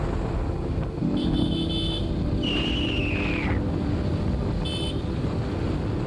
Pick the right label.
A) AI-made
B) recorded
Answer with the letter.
B